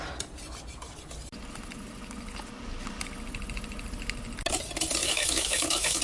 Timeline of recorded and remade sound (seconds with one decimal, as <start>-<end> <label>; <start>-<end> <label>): 0.0-5.0 recorded; 5.0-6.0 remade